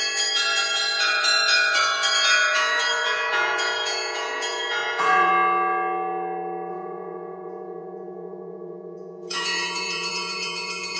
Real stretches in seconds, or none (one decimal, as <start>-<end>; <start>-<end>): 5.3-6.7